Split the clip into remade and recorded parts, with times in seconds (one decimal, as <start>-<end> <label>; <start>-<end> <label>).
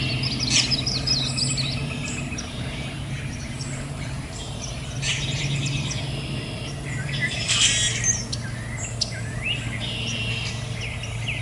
0.0-1.8 recorded; 1.8-6.0 remade; 6.0-11.4 recorded